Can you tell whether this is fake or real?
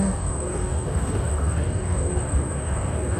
fake